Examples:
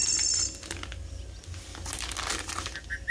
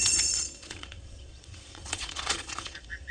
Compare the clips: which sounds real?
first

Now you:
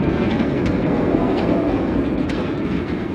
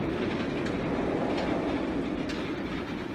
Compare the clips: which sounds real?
second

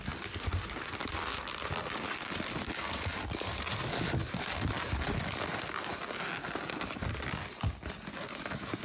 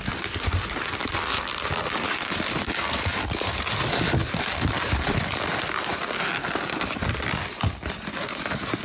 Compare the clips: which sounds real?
first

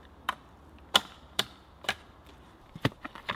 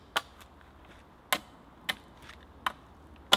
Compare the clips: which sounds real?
second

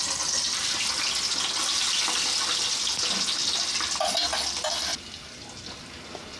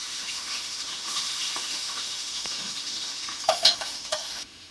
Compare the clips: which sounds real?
first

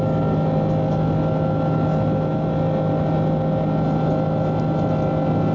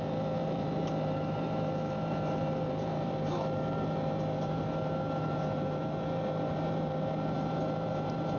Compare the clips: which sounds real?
first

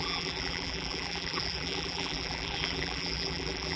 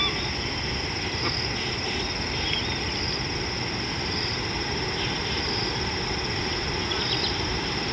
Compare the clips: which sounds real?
second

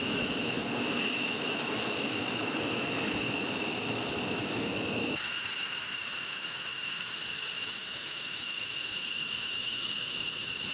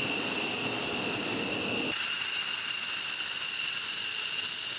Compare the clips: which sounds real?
second